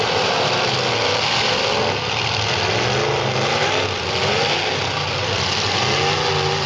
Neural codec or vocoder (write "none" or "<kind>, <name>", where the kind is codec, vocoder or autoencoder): none